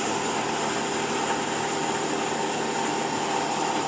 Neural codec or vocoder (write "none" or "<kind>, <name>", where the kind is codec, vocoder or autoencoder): none